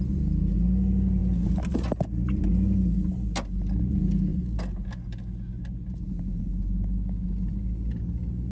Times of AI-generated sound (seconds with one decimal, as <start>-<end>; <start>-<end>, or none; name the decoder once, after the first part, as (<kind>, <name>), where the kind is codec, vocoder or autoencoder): none